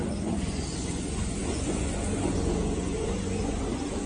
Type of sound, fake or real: fake